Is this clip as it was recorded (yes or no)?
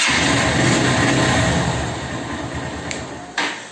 yes